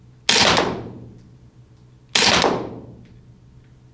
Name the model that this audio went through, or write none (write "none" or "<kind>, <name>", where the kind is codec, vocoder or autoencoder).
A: none